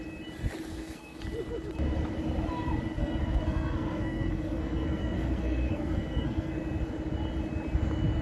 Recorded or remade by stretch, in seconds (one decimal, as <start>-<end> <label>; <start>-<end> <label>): 0.0-0.7 recorded; 0.7-1.2 remade; 1.2-3.0 recorded; 3.0-6.6 remade; 6.6-8.2 recorded